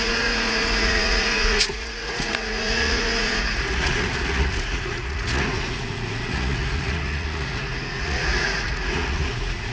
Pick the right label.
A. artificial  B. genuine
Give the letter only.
A